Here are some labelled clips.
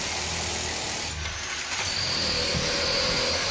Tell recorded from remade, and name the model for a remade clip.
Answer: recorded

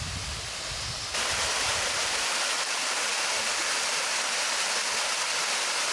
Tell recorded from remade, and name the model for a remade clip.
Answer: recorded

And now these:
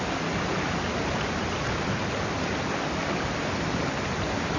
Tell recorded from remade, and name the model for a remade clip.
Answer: recorded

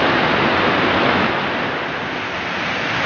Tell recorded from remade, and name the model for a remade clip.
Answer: recorded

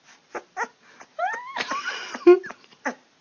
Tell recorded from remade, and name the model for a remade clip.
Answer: recorded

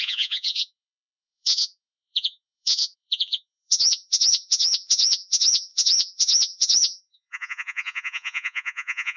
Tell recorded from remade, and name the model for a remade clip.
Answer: remade, vocoder, Vocos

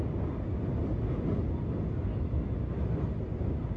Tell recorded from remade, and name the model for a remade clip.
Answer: recorded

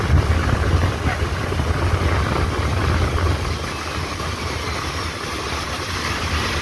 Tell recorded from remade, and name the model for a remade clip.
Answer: recorded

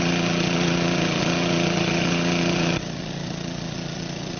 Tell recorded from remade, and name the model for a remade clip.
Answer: remade, vocoder, Vocos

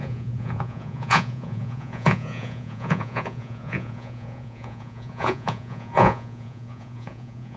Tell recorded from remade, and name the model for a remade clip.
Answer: remade, vocoder, Vocos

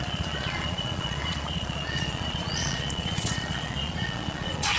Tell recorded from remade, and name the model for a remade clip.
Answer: remade, vocoder, Vocos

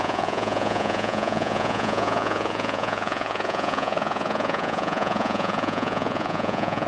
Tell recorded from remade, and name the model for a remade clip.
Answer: remade, vocoder, Vocos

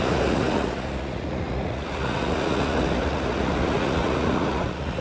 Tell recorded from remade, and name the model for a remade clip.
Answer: remade, vocoder, Vocos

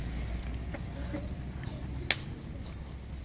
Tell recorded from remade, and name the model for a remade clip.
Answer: recorded